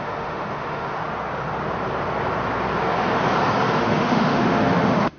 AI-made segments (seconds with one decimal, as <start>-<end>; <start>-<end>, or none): 0.0-1.0; 3.8-5.2